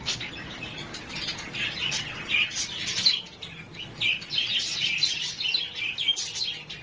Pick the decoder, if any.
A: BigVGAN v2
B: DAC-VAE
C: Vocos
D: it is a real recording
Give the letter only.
D